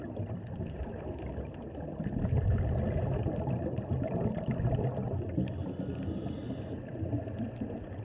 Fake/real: real